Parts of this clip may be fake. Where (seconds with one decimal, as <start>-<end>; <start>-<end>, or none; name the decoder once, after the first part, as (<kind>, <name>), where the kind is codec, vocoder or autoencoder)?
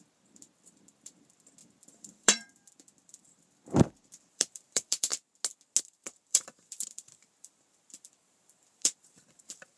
0.0-5.1 (vocoder, BigVGAN v2); 5.8-9.8